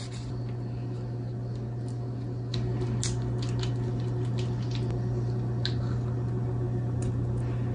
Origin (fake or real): real